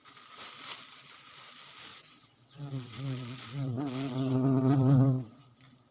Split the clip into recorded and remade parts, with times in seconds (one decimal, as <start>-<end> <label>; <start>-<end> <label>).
0.0-1.9 recorded; 1.9-5.4 remade; 5.4-5.9 recorded